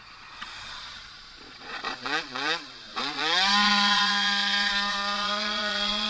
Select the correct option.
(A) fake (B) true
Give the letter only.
A